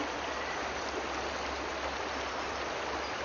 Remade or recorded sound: recorded